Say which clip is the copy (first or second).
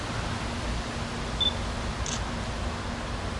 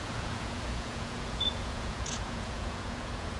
second